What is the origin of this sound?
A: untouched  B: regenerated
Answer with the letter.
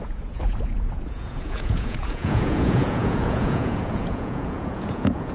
B